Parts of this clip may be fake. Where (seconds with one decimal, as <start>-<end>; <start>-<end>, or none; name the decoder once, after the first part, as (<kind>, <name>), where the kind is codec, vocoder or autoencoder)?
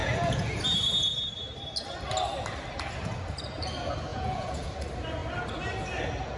0.0-0.6 (vocoder, Vocos); 4.1-4.7